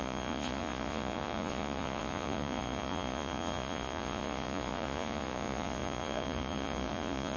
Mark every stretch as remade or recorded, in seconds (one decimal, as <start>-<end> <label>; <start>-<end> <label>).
0.0-7.4 remade